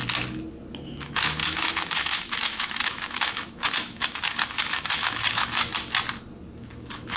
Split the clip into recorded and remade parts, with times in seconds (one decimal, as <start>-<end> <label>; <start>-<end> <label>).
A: 0.0-0.8 recorded; 0.8-5.7 remade; 5.7-6.6 recorded; 6.6-7.2 remade